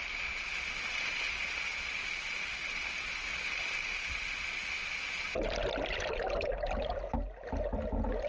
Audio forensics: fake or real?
real